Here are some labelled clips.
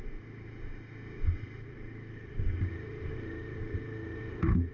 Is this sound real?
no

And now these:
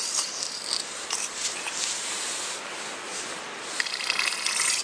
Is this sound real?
yes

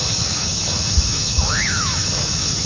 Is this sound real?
no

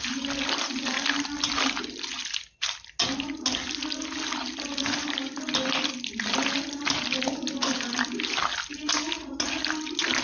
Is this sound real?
yes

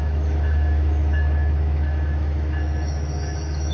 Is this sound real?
no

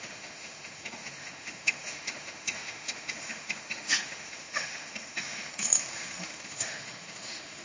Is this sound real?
no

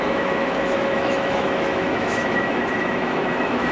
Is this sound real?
no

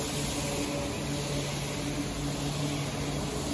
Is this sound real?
yes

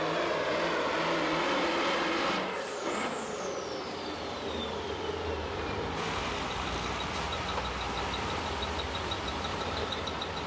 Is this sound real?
yes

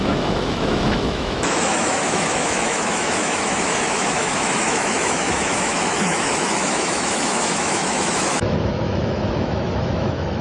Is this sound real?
no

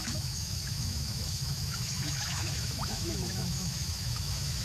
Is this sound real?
no